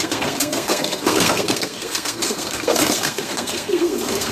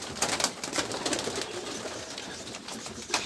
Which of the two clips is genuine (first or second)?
second